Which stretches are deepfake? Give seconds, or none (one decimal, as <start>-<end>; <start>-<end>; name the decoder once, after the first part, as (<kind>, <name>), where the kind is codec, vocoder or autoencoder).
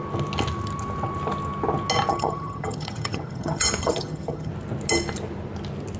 2.1-4.5 (vocoder, HiFi-GAN)